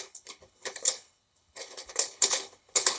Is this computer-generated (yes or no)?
yes